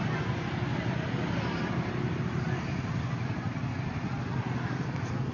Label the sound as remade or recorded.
recorded